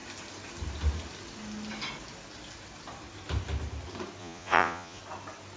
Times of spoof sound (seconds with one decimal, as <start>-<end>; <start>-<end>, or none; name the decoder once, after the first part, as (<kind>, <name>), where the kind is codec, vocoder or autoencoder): 4.2-5.0 (vocoder, Vocos)